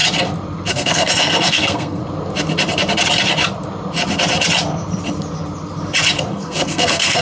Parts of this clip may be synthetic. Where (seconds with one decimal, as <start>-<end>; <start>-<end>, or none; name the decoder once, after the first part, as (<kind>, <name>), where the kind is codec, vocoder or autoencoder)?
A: 0.7-2.0 (codec, SNAC); 6.3-7.2